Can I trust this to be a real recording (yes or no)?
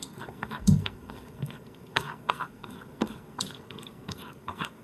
no